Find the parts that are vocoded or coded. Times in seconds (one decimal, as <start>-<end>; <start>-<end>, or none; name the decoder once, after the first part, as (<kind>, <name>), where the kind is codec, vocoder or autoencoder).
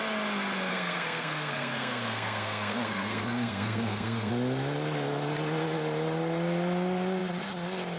0.7-4.3 (codec, SNAC)